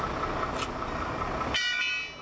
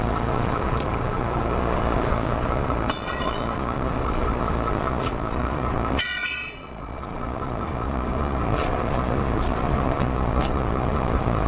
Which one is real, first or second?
first